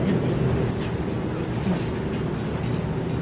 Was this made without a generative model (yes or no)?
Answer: yes